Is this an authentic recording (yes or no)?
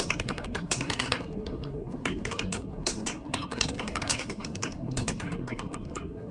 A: no